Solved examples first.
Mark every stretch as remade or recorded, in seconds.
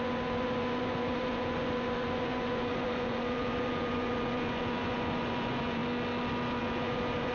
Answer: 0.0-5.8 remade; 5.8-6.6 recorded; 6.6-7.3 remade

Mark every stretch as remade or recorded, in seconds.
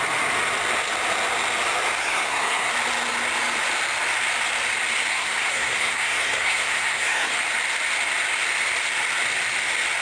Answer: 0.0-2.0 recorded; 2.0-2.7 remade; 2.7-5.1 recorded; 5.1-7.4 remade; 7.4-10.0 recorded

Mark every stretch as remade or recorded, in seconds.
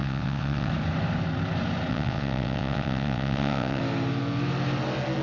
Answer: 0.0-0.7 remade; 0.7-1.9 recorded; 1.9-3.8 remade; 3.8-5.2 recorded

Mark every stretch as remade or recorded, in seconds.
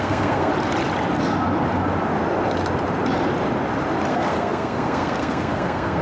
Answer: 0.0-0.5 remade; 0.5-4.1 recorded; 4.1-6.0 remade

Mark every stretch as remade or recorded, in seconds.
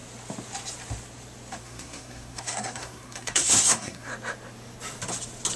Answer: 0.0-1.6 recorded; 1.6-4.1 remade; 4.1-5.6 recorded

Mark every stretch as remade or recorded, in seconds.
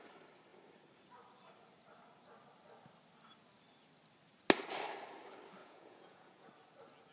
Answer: 0.0-5.6 recorded; 5.6-6.5 remade; 6.5-7.1 recorded